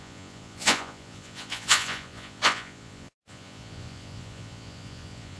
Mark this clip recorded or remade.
remade